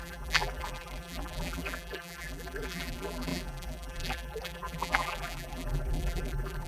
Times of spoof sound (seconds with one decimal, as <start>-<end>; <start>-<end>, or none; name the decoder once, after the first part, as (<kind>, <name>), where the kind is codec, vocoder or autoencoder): 0.0-6.7 (vocoder, BigVGAN v2)